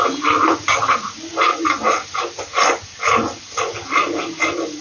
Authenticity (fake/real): real